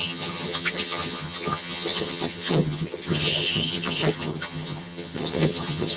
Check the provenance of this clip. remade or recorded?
remade